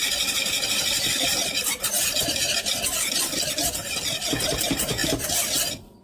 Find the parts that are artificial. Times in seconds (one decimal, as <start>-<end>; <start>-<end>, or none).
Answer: 0.0-1.7; 5.0-6.0